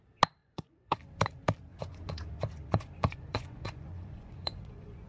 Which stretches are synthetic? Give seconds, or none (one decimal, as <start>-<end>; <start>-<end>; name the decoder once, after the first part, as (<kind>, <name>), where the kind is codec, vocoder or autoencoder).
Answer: 0.4-1.0 (vocoder, Vocos); 1.7-5.1